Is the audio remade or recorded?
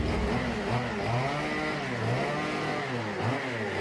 recorded